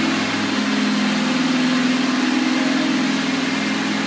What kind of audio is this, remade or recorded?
recorded